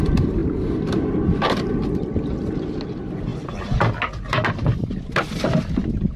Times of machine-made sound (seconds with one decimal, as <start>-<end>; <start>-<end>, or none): none